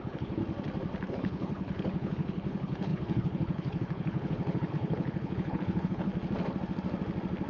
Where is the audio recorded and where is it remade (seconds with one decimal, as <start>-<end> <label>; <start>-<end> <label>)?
0.0-0.4 remade; 0.4-1.1 recorded; 1.1-6.1 remade; 6.1-7.5 recorded